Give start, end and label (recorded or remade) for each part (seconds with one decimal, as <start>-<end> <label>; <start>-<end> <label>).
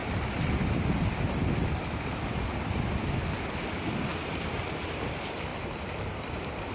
0.0-1.0 remade; 1.0-4.1 recorded; 4.1-4.8 remade; 4.8-5.5 recorded; 5.5-6.1 remade; 6.1-6.7 recorded